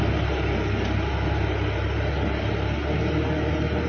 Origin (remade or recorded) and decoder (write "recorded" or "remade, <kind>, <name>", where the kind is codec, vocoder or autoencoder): recorded